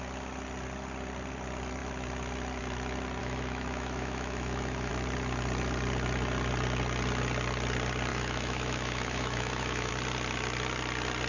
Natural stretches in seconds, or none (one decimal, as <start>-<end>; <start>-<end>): 0.0-3.2; 4.9-8.1; 9.9-11.3